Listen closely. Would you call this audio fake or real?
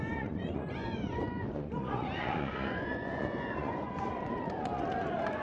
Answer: fake